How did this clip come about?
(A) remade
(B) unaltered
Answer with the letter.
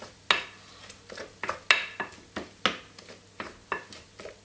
B